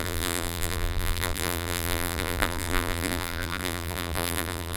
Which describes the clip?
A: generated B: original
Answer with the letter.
A